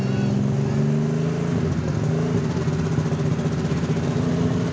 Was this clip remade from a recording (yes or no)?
no